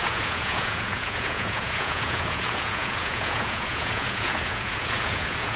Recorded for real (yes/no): no